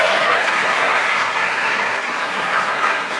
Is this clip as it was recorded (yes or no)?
no